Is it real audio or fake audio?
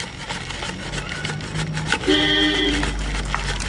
real